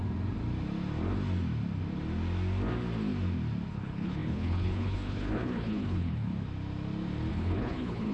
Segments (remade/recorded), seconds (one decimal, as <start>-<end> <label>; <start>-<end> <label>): 0.0-3.7 recorded; 3.7-6.3 remade; 6.3-7.3 recorded; 7.3-8.1 remade